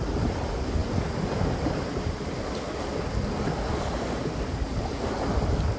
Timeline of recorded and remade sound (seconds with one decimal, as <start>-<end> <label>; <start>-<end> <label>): 0.0-5.8 recorded

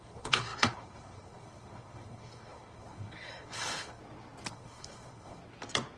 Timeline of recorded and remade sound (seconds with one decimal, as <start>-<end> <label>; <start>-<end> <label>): 0.0-4.0 remade; 4.0-4.5 recorded; 4.5-5.4 remade; 5.4-6.0 recorded